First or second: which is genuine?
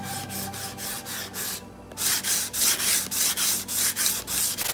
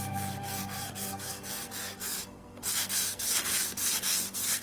first